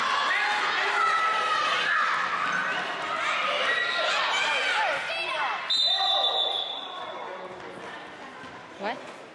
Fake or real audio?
real